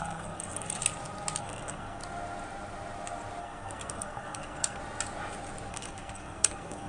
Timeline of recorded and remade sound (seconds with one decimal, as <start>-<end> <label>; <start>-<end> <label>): 0.0-0.8 remade; 0.8-1.4 recorded; 1.4-2.0 remade; 2.0-3.4 recorded; 3.4-4.8 remade; 4.8-5.7 recorded; 5.7-6.9 remade